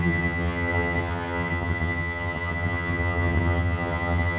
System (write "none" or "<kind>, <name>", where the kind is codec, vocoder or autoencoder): vocoder, HiFi-GAN